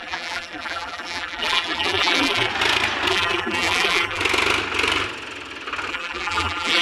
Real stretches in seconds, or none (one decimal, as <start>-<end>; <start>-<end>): 2.5-3.1; 4.2-5.9